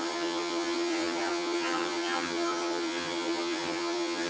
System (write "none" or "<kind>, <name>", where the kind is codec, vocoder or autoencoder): vocoder, HiFi-GAN